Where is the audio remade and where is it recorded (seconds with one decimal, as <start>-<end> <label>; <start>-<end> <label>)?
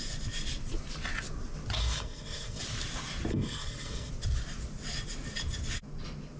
0.0-1.8 recorded; 1.8-2.6 remade; 2.6-3.3 recorded; 3.3-4.1 remade; 4.1-6.4 recorded